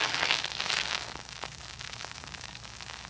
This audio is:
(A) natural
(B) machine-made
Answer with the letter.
B